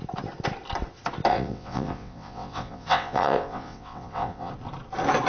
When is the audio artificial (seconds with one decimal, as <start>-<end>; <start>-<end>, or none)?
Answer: 1.3-4.5